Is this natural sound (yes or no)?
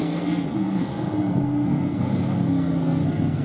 no